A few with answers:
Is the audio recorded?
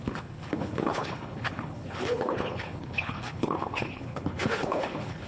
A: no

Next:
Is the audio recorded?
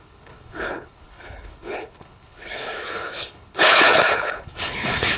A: no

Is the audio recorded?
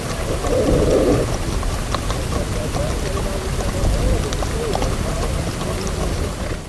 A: yes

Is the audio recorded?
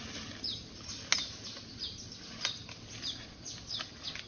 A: yes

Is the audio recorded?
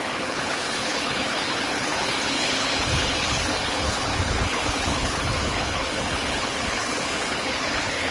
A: no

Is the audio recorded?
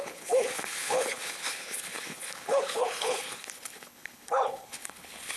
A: no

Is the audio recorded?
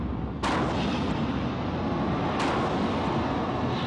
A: yes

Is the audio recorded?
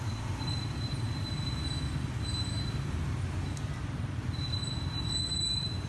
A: yes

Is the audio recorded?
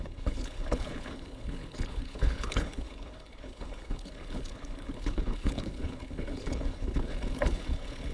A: no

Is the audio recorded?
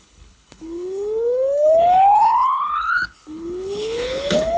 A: no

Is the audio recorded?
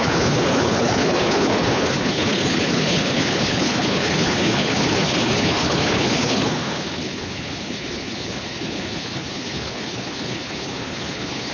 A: no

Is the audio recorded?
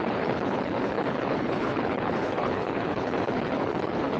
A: no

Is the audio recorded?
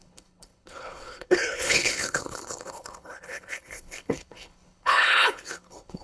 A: no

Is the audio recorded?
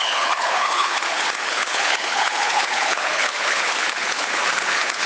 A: no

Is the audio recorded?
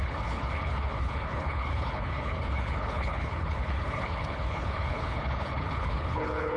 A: no